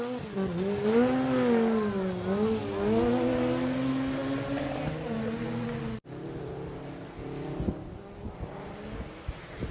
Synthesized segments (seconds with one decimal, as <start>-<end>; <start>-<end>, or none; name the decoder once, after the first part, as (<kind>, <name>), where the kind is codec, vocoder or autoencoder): none